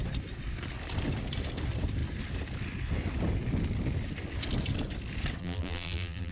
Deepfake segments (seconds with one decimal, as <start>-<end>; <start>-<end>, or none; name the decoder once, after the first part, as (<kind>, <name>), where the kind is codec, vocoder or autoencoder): 5.4-6.3 (vocoder, BigVGAN v2)